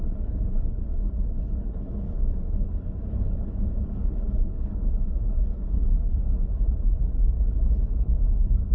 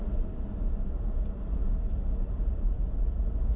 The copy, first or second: first